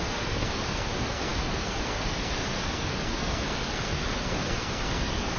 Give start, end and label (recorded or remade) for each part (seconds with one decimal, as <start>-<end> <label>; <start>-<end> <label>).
0.0-5.4 remade